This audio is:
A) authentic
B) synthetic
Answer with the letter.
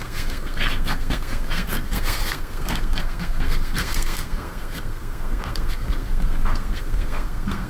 B